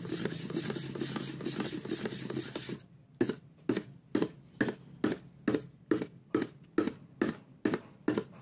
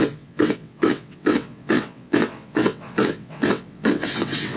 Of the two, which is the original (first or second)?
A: first